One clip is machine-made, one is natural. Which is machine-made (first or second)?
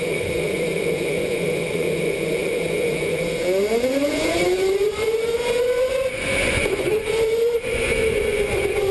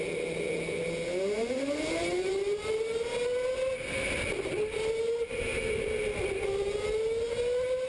first